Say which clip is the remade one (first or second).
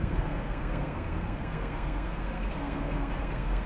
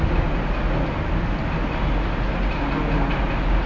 first